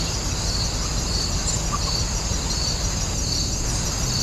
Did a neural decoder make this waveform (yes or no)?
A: no